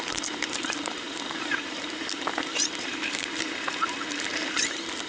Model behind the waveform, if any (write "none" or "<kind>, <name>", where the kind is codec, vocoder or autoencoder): vocoder, BigVGAN v2